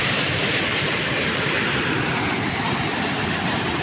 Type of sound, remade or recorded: remade